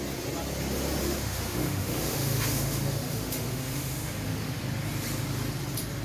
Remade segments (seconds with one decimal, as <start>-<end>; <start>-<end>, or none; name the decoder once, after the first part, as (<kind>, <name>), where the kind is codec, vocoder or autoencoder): 1.0-4.6 (autoencoder, DAC-VAE)